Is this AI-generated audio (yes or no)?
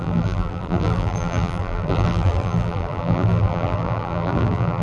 yes